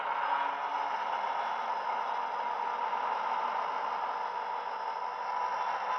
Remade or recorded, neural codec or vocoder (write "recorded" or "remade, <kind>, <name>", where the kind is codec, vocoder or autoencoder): recorded